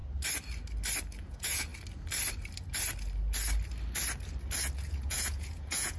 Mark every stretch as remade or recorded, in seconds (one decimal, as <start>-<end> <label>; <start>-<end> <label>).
0.0-1.2 recorded; 1.2-1.7 remade; 1.7-4.8 recorded; 4.8-6.0 remade

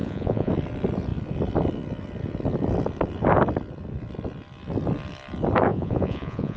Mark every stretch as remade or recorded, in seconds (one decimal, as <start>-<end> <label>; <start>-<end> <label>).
0.0-0.5 remade; 0.5-5.7 recorded; 5.7-6.6 remade

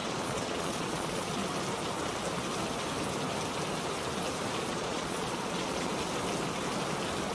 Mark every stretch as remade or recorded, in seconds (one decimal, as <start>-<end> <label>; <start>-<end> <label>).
0.0-1.4 remade; 1.4-4.7 recorded; 4.7-5.9 remade; 5.9-7.3 recorded

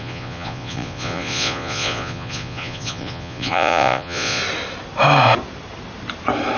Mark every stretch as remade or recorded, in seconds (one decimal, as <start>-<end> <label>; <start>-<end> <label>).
0.0-4.4 remade; 4.4-6.6 recorded

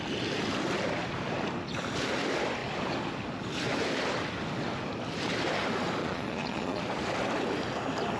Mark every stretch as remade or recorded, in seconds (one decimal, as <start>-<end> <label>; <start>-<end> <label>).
0.0-6.0 recorded; 6.0-6.8 remade; 6.8-8.2 recorded

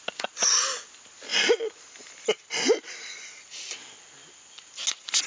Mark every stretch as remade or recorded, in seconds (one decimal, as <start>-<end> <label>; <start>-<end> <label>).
0.0-5.3 recorded

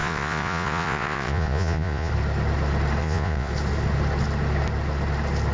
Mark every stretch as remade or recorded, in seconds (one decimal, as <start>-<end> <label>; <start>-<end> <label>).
0.0-2.1 remade; 2.1-3.0 recorded; 3.0-3.5 remade; 3.5-5.5 recorded

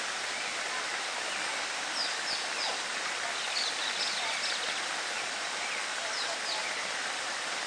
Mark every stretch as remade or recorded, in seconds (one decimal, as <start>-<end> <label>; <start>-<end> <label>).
0.0-7.7 recorded